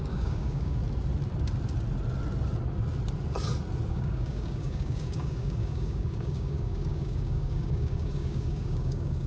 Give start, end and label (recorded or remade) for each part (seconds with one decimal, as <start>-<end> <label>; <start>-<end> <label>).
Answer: 0.0-0.8 remade; 0.8-3.9 recorded; 3.9-9.3 remade